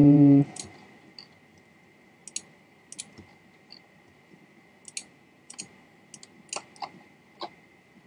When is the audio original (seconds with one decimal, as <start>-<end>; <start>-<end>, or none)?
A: 0.6-5.0; 5.6-8.1